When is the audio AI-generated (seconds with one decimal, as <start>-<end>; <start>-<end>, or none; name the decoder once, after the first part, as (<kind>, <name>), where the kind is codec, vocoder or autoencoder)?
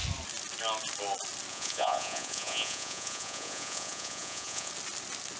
1.5-4.7 (vocoder, Vocos)